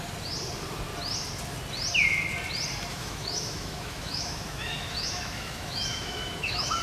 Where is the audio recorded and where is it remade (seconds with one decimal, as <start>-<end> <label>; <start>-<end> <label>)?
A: 0.0-2.9 recorded; 2.9-6.8 remade